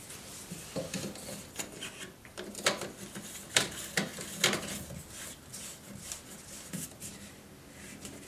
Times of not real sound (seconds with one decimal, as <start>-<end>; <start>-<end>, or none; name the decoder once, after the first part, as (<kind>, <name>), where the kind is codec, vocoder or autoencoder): none

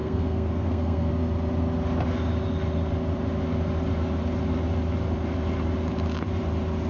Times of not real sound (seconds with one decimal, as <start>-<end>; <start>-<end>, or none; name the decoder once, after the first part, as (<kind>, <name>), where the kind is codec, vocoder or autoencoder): 0.0-1.1 (codec, SNAC)